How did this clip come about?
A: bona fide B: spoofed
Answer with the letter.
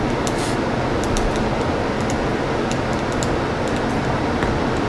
A